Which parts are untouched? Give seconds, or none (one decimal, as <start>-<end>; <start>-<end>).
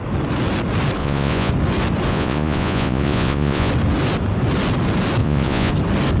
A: 0.0-1.0; 1.5-2.1; 3.7-5.2; 5.7-6.2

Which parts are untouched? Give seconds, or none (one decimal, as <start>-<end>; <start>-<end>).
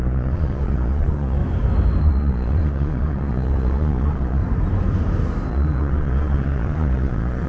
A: 1.4-2.0; 4.4-5.5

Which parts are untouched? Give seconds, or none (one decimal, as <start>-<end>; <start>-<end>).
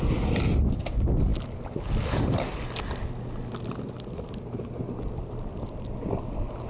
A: 0.0-6.7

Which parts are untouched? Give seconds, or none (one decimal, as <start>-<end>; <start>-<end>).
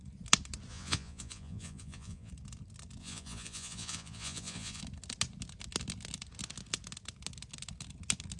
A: 0.0-0.7; 2.3-3.0; 4.8-8.4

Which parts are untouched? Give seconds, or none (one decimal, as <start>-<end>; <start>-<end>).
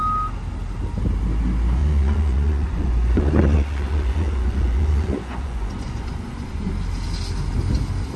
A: 0.0-1.8; 6.7-8.2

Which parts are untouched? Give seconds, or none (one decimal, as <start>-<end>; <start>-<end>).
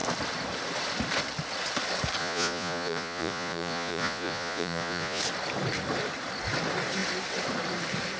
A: 0.0-2.2; 5.2-8.2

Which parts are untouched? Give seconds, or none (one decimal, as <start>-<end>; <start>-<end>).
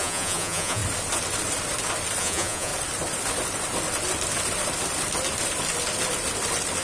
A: 0.8-2.2; 2.7-6.8